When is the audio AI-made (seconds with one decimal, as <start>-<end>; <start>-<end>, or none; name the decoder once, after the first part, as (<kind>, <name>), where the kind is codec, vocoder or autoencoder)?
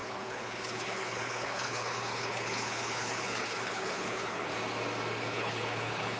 0.0-4.5 (codec, HILCodec); 5.2-6.2